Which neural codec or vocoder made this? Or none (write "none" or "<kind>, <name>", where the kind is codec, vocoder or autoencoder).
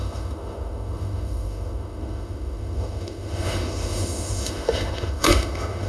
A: autoencoder, DAC-VAE